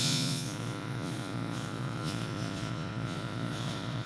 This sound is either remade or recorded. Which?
remade